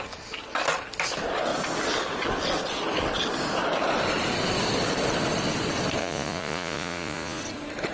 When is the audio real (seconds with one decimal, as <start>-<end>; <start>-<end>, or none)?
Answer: 0.0-6.0; 7.4-7.9